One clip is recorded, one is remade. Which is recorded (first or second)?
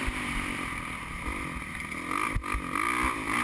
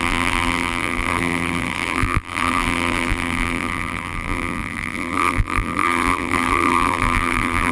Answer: first